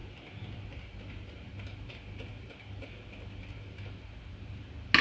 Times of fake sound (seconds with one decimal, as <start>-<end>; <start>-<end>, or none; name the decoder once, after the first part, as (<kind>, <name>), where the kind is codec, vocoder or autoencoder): none